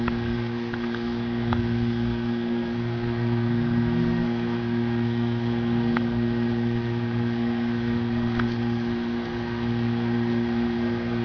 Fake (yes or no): yes